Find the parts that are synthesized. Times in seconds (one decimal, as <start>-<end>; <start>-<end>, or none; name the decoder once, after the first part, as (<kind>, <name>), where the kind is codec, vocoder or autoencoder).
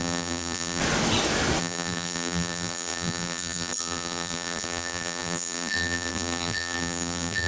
0.0-0.8 (vocoder, BigVGAN v2); 1.6-7.5